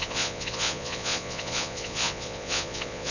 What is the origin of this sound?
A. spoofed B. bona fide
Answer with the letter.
A